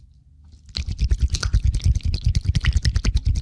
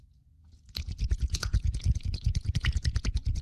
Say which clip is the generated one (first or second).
second